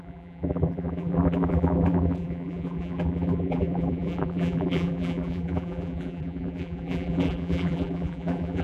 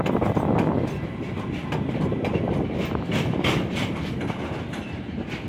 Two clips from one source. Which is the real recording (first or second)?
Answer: second